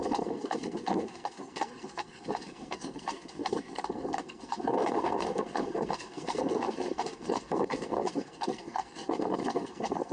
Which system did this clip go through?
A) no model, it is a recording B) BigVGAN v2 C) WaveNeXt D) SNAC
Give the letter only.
D